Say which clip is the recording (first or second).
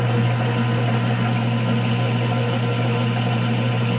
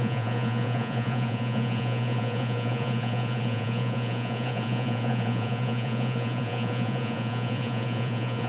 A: first